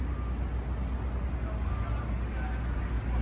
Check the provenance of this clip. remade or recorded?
recorded